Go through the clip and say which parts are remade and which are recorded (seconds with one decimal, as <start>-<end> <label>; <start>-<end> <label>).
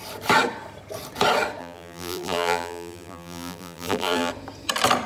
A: 0.0-1.6 recorded; 1.6-4.3 remade; 4.3-5.1 recorded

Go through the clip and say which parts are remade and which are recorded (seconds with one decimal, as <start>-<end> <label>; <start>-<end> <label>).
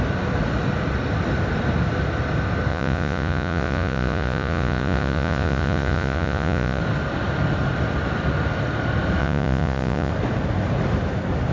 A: 0.0-2.7 recorded; 2.7-6.8 remade; 6.8-9.2 recorded; 9.2-10.1 remade; 10.1-11.5 recorded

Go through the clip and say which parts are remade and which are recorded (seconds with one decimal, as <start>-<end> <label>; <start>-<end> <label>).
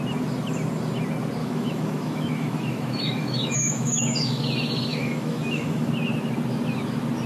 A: 0.0-1.4 recorded; 1.4-4.4 remade; 4.4-4.9 recorded; 4.9-5.9 remade; 5.9-7.3 recorded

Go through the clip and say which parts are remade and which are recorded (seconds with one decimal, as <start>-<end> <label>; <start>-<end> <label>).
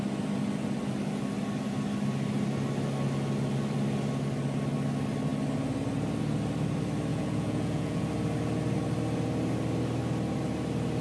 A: 0.0-7.1 recorded; 7.1-8.0 remade; 8.0-11.0 recorded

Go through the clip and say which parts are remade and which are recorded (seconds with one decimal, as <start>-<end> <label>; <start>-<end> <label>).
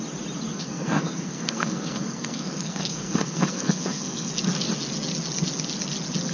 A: 0.0-0.5 recorded; 0.5-4.3 remade; 4.3-6.3 recorded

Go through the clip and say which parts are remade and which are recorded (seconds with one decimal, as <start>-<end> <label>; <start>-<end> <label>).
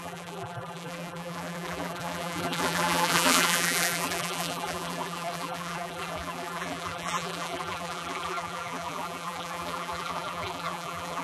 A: 0.0-11.2 remade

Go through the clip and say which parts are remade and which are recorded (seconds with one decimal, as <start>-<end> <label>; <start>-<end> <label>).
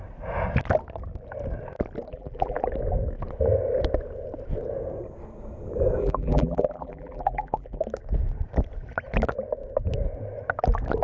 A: 0.0-2.1 recorded; 2.1-2.6 remade; 2.6-6.0 recorded; 6.0-7.8 remade; 7.8-11.0 recorded